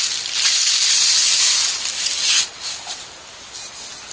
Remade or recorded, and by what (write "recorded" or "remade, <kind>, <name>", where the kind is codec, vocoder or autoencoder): recorded